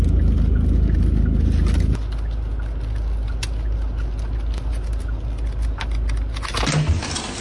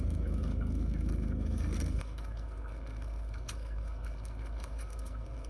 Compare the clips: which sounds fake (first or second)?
second